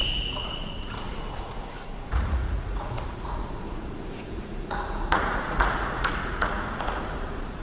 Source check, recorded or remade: remade